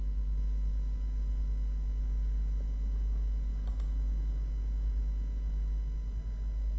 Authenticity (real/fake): real